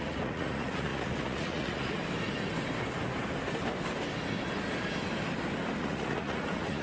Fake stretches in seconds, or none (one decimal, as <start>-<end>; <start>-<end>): 0.0-2.0; 5.8-6.8